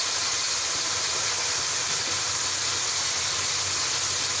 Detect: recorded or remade recorded